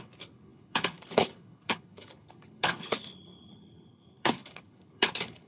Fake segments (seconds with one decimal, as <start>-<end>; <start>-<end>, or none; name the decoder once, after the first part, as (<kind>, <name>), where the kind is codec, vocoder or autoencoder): 0.0-5.5 (codec, HILCodec)